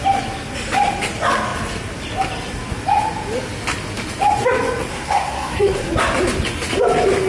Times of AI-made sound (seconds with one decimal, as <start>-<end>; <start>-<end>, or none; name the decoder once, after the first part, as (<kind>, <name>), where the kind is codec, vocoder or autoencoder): 4.9-5.9 (codec, SNAC)